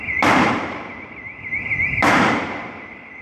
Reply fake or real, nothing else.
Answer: real